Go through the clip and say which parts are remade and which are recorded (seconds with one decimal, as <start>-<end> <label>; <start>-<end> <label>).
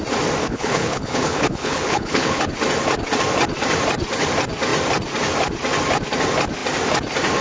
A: 0.0-0.4 recorded; 0.4-2.4 remade; 2.4-7.4 recorded